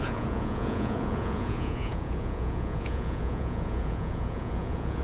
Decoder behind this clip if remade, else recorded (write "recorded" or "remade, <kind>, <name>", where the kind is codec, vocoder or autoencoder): remade, vocoder, Vocos